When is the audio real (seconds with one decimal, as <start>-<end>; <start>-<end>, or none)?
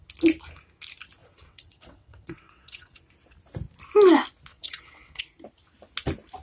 0.0-1.2; 3.0-4.5; 5.2-6.4